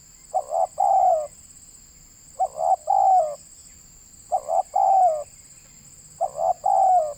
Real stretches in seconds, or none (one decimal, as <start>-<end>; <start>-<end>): 0.0-7.2